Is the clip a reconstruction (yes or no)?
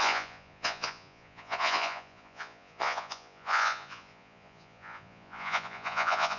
yes